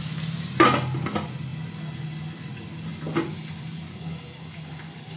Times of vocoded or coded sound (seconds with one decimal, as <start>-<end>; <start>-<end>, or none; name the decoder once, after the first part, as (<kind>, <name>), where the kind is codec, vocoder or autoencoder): none